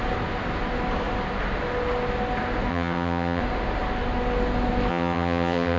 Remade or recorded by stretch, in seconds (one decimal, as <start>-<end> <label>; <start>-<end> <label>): 0.0-2.7 recorded; 2.7-3.4 remade; 3.4-4.9 recorded; 4.9-5.8 remade